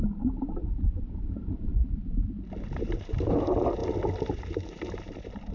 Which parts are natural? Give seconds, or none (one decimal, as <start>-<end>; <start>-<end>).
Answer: 3.8-4.3